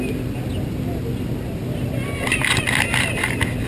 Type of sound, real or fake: real